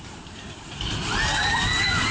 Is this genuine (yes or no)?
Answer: no